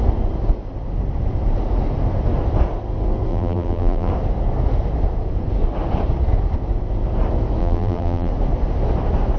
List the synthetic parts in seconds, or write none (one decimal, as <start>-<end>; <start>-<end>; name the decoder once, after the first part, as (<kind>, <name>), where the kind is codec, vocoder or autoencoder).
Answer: 3.3-4.1 (vocoder, BigVGAN v2); 7.6-8.3